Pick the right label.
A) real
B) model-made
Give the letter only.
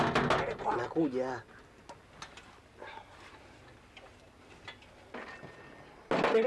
A